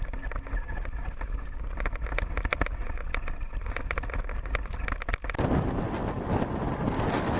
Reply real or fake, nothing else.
real